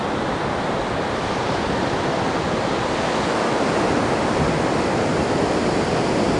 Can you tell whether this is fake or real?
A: real